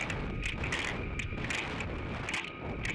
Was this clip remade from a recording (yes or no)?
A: no